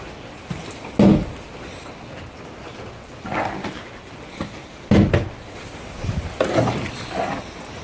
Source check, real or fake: real